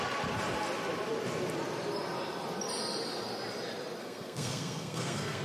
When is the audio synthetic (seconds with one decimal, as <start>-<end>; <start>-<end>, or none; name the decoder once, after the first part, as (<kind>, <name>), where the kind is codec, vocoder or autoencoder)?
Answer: 4.0-5.4 (codec, SNAC)